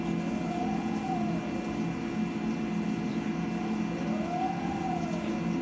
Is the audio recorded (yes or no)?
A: yes